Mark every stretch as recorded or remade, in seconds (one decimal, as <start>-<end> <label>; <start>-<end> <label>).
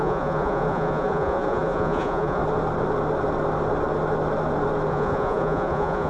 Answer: 0.0-2.4 remade; 2.4-4.9 recorded; 4.9-6.1 remade